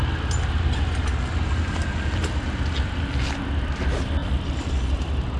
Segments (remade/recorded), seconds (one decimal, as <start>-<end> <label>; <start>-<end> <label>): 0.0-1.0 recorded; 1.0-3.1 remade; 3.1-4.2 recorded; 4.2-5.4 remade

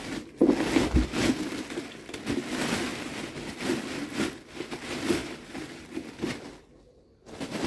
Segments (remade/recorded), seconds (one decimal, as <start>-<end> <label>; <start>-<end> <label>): 0.0-2.9 recorded; 2.9-4.8 remade; 4.8-7.7 recorded

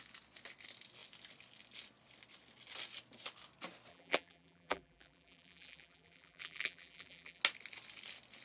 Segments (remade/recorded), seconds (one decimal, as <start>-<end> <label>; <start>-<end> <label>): 0.0-3.9 recorded; 3.9-7.4 remade; 7.4-8.4 recorded

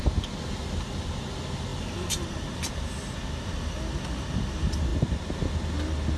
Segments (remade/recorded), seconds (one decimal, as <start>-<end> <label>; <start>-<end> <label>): 0.0-1.7 recorded; 1.7-2.7 remade; 2.7-4.9 recorded; 4.9-5.4 remade; 5.4-6.2 recorded